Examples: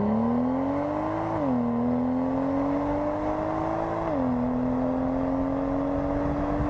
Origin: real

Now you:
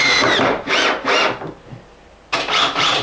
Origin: real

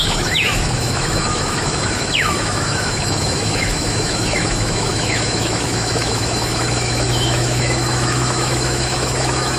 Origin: fake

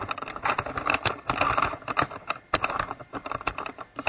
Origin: real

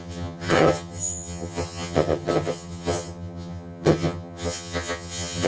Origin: fake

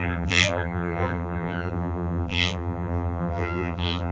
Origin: fake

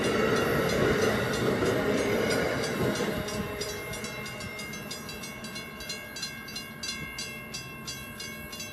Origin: real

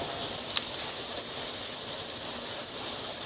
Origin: real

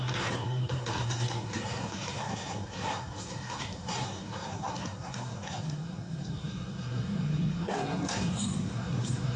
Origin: fake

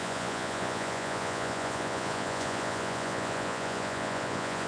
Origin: fake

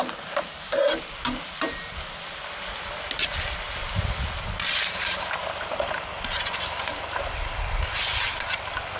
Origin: real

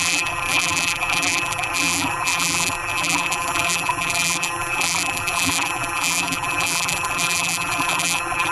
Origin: fake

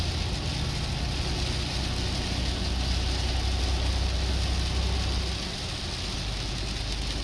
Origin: real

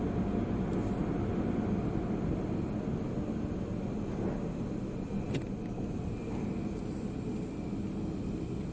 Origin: real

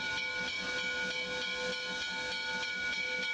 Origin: real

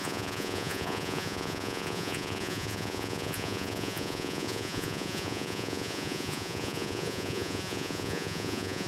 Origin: fake